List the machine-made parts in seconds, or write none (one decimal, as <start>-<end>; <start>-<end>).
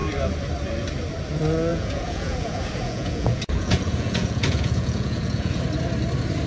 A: 1.7-5.6